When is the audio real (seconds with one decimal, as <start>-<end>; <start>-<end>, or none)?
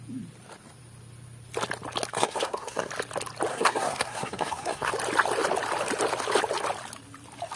0.0-2.1; 2.9-3.5; 4.9-7.6